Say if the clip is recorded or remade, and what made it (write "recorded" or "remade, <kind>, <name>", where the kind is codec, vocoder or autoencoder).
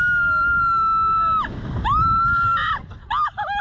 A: recorded